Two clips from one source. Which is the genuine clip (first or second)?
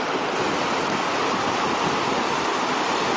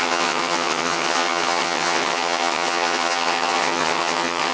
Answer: first